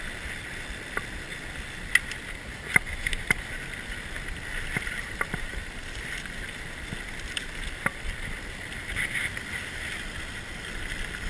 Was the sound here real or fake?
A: real